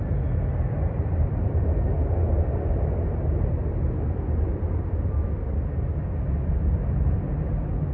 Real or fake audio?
real